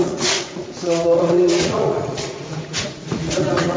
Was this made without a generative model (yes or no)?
no